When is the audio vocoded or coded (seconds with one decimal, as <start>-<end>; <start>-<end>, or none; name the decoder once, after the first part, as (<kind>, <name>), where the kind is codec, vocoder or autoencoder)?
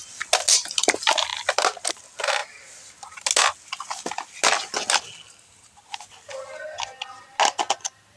none